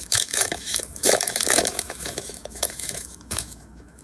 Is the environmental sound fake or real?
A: fake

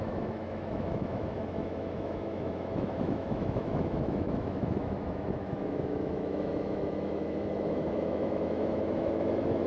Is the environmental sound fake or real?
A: fake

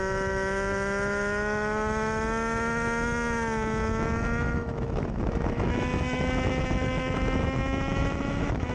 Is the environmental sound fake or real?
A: fake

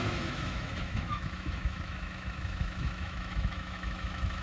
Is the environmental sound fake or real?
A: fake